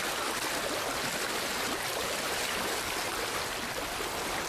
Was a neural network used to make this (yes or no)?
no